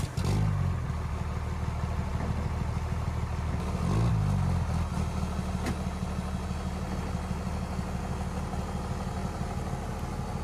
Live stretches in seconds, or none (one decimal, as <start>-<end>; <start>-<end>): 0.0-10.4